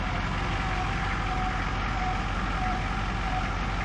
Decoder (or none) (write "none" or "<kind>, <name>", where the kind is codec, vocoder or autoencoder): none